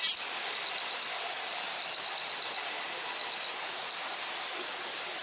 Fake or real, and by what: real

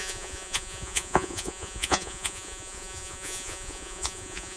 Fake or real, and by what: fake, vocoder, Vocos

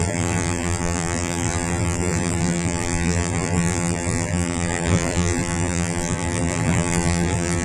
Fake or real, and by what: fake, vocoder, BigVGAN v2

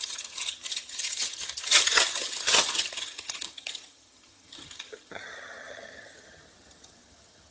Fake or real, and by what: fake, vocoder, HiFi-GAN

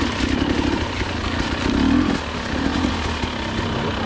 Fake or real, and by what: real